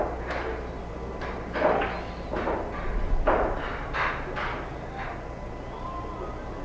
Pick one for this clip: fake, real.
real